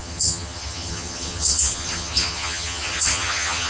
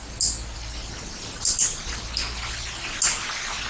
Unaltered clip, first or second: second